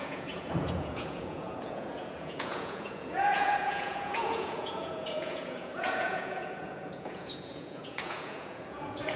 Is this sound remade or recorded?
remade